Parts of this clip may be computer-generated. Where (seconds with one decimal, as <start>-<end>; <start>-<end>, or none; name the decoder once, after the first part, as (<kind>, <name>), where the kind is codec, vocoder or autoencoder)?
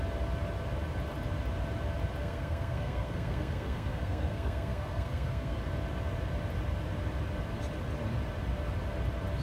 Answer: 2.2-5.6 (codec, SNAC)